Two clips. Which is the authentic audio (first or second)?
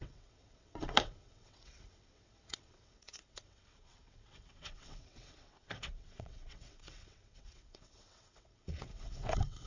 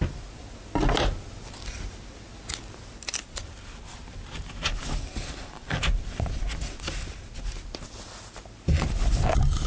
second